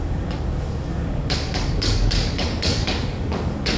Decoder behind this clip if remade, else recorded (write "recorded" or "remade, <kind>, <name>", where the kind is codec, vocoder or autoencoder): remade, codec, DAC